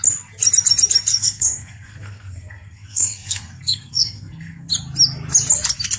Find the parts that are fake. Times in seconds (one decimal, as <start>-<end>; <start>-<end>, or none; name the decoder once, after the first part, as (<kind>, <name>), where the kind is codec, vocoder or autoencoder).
1.1-4.7 (codec, SNAC)